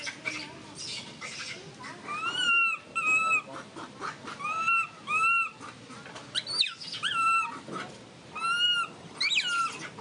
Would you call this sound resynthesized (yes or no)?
no